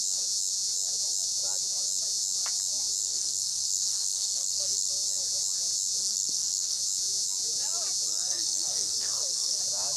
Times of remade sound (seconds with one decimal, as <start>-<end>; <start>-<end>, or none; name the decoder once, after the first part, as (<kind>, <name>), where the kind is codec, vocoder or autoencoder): 3.0-4.9 (codec, SNAC); 6.0-6.8; 8.1-9.6